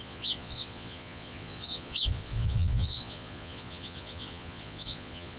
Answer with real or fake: fake